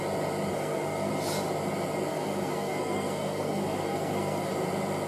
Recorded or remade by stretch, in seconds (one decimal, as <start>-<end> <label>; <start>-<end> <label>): 0.0-0.5 recorded; 0.5-1.1 remade; 1.1-2.1 recorded; 2.1-4.5 remade; 4.5-5.1 recorded

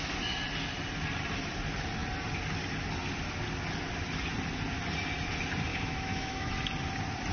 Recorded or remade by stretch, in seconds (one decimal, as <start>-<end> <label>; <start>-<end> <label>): 0.0-5.7 recorded; 5.7-6.5 remade; 6.5-7.3 recorded